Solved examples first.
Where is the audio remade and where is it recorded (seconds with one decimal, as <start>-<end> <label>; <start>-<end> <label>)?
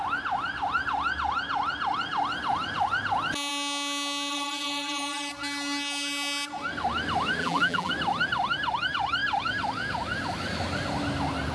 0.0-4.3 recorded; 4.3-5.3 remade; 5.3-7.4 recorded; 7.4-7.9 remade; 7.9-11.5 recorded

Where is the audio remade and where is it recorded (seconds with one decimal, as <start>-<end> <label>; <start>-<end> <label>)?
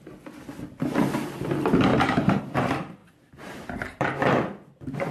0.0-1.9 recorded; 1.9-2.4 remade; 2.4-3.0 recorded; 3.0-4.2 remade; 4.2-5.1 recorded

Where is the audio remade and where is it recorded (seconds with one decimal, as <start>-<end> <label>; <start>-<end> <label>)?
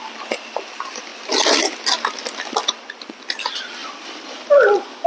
0.0-5.1 recorded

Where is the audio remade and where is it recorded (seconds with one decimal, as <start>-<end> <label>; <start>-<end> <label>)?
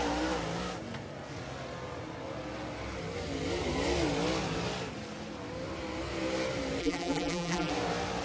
0.0-6.8 recorded; 6.8-7.7 remade; 7.7-8.2 recorded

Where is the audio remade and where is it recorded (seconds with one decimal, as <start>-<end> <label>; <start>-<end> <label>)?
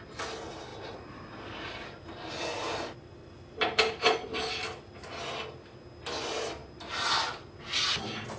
0.0-0.7 recorded; 0.7-4.3 remade; 4.3-8.4 recorded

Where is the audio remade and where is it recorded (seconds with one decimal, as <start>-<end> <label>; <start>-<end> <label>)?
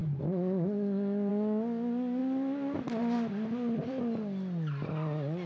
0.0-2.2 recorded; 2.2-4.0 remade; 4.0-5.5 recorded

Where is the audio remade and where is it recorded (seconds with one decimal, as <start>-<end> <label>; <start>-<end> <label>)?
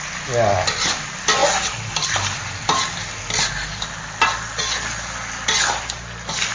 0.0-1.4 recorded; 1.4-2.4 remade; 2.4-6.5 recorded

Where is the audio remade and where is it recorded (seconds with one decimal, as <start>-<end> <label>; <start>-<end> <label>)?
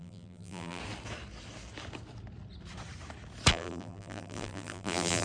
0.0-0.8 remade; 0.8-3.5 recorded; 3.5-5.2 remade